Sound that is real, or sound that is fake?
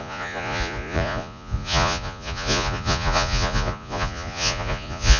fake